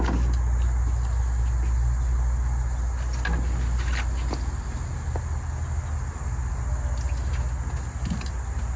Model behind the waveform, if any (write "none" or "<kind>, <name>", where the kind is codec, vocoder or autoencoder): none